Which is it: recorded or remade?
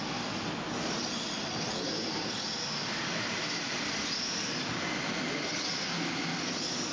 recorded